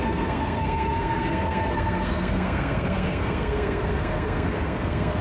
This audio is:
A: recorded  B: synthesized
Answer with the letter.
B